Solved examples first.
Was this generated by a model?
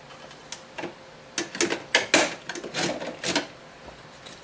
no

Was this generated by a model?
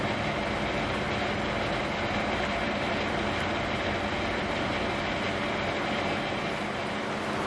no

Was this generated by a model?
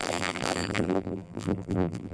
yes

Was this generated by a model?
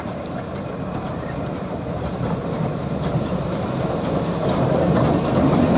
yes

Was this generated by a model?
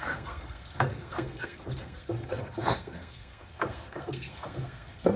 yes